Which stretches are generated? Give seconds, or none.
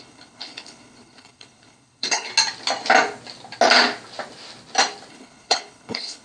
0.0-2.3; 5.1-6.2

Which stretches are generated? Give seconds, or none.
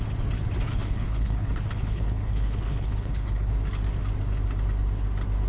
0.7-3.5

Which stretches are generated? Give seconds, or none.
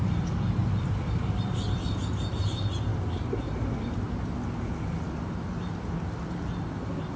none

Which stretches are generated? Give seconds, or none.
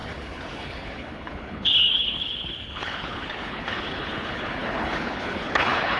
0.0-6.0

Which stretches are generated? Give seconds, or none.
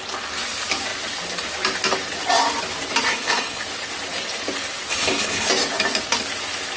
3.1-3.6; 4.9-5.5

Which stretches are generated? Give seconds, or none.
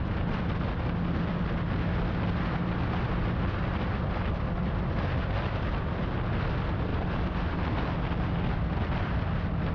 none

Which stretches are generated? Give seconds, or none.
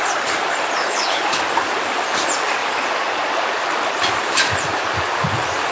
0.8-1.4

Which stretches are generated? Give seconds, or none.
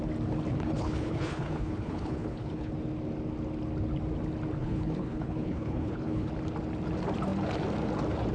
0.5-2.7; 4.6-6.3